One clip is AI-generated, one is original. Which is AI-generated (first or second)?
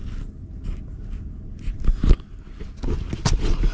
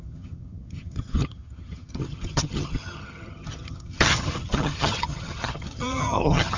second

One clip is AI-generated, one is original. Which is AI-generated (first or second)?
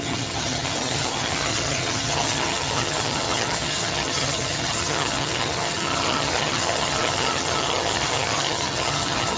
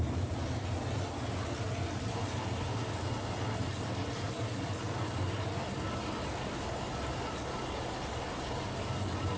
first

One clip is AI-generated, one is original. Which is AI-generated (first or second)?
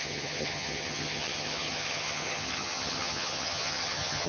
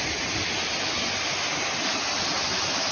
first